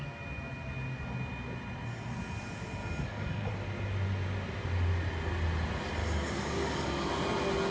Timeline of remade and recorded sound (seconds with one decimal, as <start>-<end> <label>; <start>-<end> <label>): 0.0-2.8 recorded; 2.8-3.5 remade; 3.5-6.0 recorded; 6.0-7.1 remade; 7.1-7.7 recorded